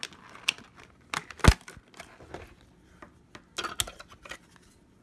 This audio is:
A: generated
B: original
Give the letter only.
B